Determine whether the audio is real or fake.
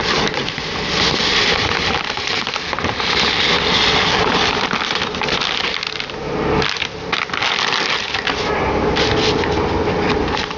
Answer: real